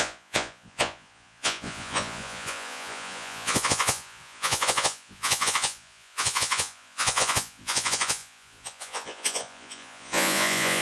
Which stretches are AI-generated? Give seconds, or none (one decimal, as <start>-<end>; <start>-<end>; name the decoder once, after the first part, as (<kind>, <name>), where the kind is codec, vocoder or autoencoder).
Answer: 0.0-10.8 (vocoder, Vocos)